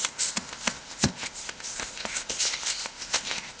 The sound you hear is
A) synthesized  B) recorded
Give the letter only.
A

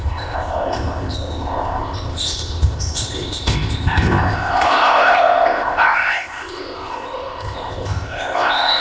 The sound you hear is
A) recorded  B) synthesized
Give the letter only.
B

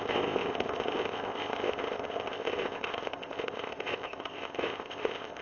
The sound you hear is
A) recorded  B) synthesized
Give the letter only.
B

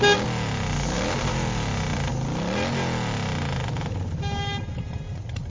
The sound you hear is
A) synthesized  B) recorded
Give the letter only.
B